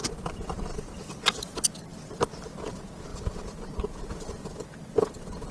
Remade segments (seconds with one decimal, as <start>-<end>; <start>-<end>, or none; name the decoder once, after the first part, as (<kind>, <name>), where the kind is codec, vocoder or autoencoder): none